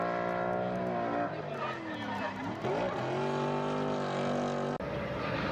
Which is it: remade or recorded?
recorded